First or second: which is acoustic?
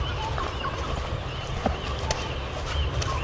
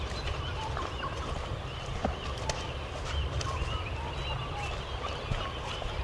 first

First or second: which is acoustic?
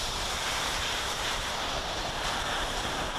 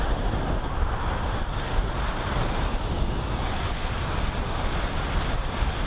second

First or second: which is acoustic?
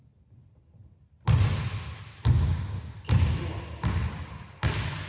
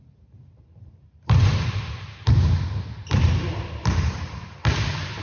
first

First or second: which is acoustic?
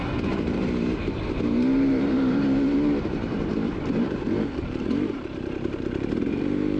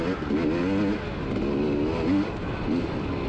second